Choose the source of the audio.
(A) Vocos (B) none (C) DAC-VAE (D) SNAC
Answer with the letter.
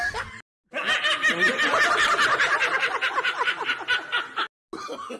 B